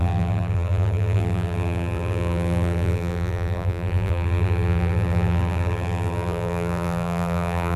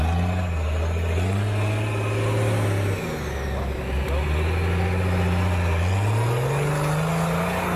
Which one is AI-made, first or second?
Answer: first